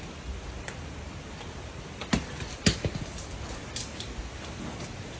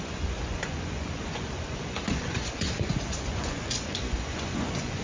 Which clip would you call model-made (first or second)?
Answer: second